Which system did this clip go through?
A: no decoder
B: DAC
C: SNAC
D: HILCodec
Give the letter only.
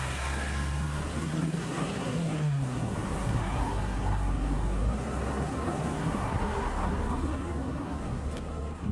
C